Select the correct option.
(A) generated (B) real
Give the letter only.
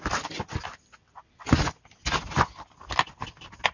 B